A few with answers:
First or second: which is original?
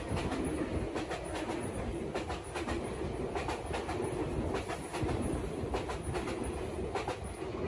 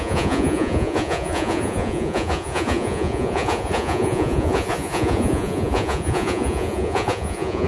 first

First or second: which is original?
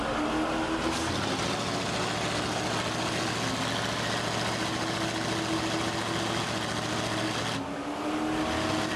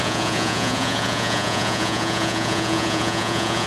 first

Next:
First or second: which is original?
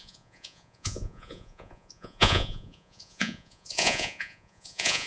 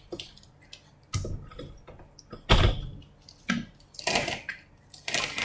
second